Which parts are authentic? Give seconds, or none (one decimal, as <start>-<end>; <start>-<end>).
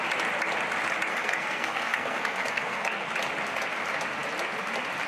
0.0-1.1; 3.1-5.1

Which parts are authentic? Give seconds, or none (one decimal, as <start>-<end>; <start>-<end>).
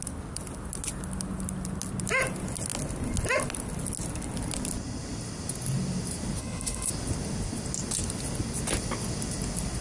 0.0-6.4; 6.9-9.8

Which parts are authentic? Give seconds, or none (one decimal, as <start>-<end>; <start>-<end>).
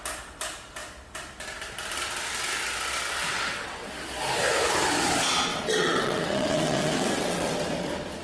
0.0-3.3; 3.9-5.5; 7.5-8.2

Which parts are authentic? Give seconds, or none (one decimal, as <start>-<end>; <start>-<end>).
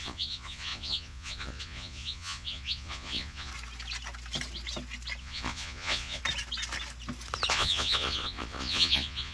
3.5-5.2; 6.2-7.5